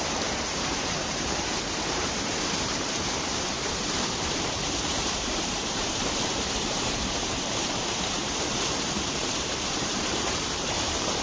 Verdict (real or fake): fake